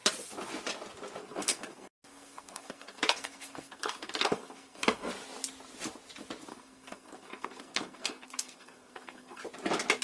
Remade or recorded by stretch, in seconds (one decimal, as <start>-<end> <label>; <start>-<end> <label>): 0.0-1.2 recorded; 1.2-5.1 remade; 5.1-6.5 recorded; 6.5-9.4 remade; 9.4-10.0 recorded